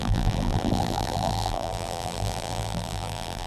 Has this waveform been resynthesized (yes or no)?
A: yes